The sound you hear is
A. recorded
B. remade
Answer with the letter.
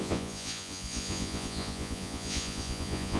B